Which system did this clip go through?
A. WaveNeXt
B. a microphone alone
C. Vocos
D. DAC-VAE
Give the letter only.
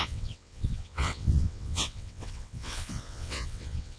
A